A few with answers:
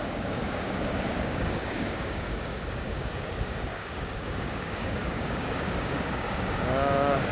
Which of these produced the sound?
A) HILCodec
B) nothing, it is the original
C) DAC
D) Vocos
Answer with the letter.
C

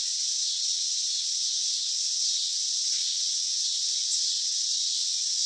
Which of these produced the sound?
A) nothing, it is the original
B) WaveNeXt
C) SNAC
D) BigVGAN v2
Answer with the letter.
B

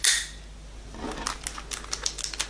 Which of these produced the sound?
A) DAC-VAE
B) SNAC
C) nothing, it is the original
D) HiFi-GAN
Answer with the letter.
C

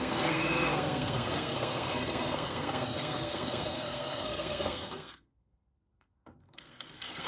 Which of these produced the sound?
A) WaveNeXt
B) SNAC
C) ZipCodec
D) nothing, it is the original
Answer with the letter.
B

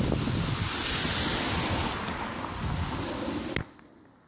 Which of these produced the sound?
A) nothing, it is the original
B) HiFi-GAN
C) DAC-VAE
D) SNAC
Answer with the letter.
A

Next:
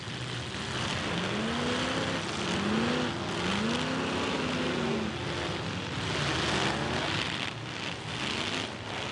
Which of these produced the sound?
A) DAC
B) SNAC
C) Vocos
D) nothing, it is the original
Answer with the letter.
D